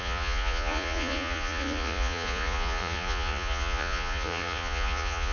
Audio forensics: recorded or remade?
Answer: remade